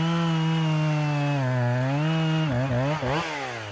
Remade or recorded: recorded